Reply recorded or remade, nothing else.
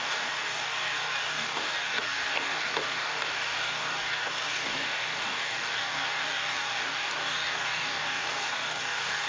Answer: remade